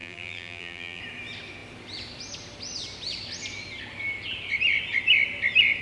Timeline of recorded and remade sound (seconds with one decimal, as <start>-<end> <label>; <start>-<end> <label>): 0.0-1.0 remade; 1.0-5.8 recorded

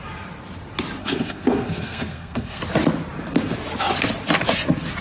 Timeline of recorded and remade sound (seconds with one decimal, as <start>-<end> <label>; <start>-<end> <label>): 0.0-1.0 recorded; 1.0-2.6 remade; 2.6-5.0 recorded

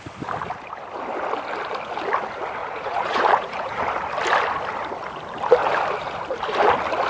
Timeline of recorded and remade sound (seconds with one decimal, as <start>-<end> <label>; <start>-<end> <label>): 0.0-2.6 recorded; 2.6-3.8 remade; 3.8-7.1 recorded

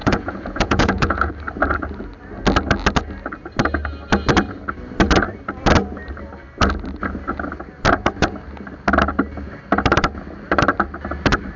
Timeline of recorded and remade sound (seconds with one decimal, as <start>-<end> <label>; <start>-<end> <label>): 0.0-1.3 remade; 1.3-11.6 recorded

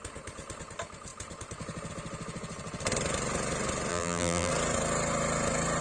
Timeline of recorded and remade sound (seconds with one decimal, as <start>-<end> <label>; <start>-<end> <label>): 0.0-3.9 recorded; 3.9-4.5 remade; 4.5-5.8 recorded